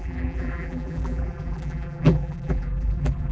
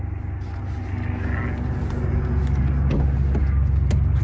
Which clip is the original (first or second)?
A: second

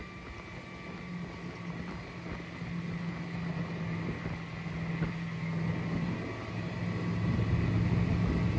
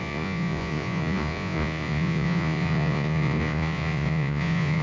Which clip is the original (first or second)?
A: first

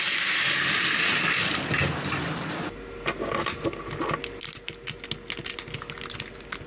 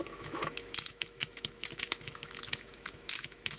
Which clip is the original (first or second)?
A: first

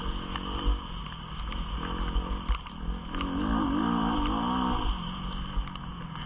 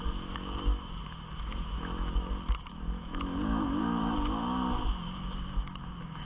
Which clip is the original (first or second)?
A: first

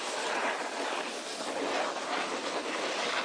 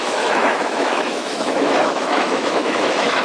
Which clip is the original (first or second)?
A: first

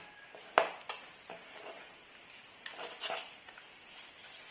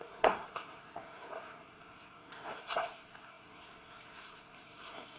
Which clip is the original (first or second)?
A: first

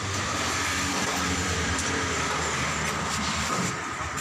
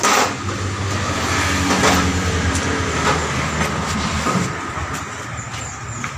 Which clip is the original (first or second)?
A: second